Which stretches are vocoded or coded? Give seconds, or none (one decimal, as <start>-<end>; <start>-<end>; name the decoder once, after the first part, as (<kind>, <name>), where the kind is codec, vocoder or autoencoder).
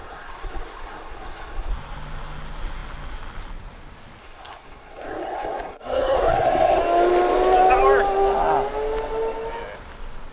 0.0-1.7 (codec, SNAC); 4.2-6.8